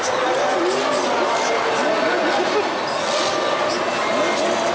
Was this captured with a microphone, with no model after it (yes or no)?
yes